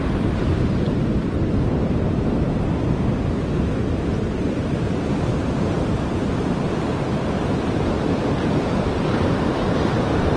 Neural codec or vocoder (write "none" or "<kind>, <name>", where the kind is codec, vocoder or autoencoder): vocoder, BigVGAN v2